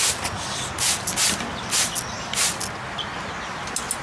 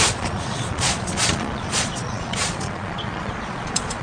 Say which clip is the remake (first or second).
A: second